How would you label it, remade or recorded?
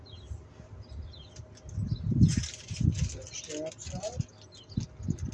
recorded